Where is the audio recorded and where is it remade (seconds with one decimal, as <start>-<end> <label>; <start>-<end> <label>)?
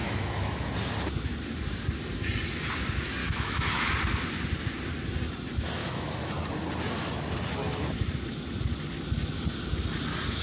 0.0-0.7 remade; 0.7-3.2 recorded; 3.2-3.9 remade; 3.9-5.8 recorded; 5.8-6.3 remade; 6.3-10.4 recorded